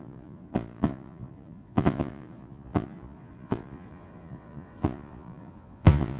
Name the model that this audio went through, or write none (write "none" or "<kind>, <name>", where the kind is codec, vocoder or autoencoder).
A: vocoder, Vocos